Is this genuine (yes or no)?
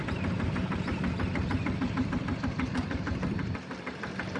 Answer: no